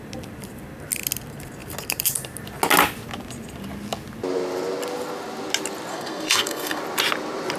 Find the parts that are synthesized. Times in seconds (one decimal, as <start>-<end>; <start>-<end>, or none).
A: 5.9-6.8